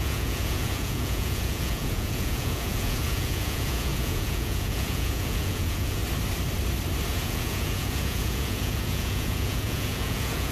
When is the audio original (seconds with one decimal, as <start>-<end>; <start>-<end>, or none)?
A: 6.0-7.1